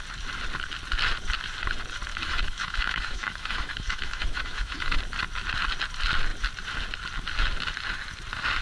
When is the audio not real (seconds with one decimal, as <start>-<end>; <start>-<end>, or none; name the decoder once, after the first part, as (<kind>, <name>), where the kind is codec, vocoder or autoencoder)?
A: 2.1-5.0 (autoencoder, DAC-VAE)